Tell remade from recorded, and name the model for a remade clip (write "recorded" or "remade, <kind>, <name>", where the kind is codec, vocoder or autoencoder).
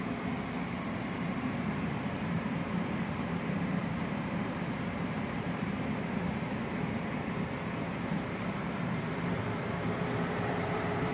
remade, vocoder, BigVGAN v2